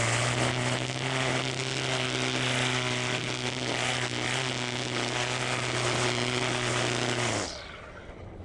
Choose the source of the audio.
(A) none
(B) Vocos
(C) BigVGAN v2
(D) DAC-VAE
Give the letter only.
A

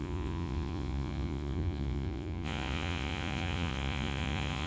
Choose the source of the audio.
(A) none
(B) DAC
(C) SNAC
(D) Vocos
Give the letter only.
D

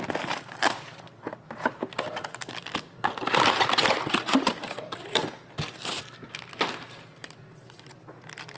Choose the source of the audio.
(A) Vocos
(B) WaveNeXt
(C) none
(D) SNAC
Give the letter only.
C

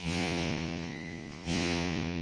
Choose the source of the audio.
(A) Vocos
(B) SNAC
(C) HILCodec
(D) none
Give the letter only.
A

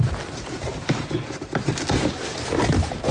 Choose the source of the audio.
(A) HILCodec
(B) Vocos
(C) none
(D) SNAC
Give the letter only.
C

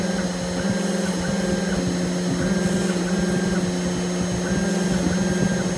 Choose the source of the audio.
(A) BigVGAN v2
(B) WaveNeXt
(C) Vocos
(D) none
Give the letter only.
D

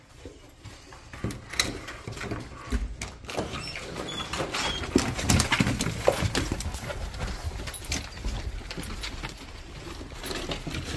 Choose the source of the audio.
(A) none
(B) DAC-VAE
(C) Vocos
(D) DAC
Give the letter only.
A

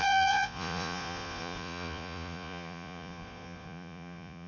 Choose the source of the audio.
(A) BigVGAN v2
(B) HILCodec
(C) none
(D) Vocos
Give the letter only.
D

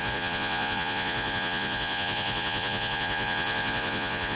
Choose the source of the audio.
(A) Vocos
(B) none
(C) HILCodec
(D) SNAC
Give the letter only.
A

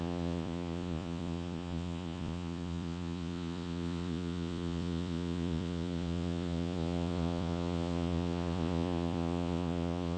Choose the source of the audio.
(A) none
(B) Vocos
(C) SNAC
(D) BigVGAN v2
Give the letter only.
B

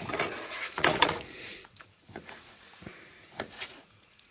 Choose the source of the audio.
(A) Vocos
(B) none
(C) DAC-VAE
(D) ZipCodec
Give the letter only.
A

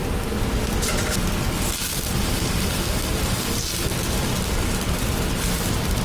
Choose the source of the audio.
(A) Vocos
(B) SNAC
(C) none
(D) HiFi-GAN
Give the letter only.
C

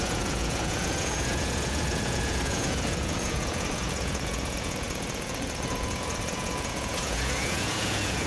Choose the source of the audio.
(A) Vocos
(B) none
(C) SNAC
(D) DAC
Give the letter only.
A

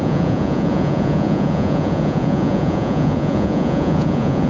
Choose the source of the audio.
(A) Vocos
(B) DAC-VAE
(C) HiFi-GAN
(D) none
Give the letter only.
A